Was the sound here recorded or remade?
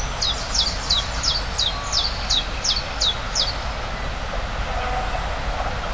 recorded